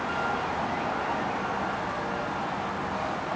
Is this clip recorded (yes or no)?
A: yes